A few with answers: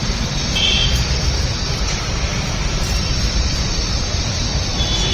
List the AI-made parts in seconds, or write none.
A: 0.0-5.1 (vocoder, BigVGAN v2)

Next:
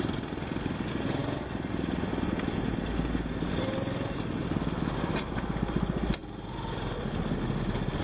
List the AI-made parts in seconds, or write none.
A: none

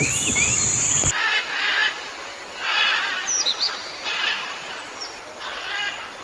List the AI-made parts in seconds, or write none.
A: 0.0-6.2 (vocoder, BigVGAN v2)

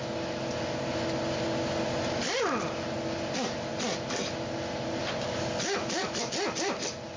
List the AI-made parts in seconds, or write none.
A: none

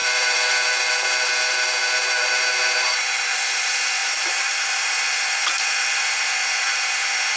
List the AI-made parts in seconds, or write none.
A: 0.0-3.0 (vocoder, BigVGAN v2); 4.0-4.9

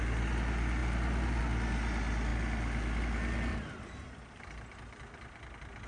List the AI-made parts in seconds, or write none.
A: 3.5-5.5 (vocoder, BigVGAN v2)

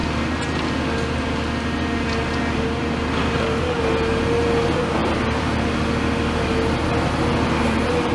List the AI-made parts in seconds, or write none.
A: 5.0-5.6 (vocoder, BigVGAN v2)

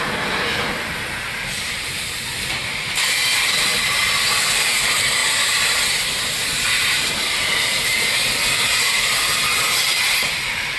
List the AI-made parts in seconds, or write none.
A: 0.0-5.2 (vocoder, BigVGAN v2); 6.9-8.2; 9.9-10.8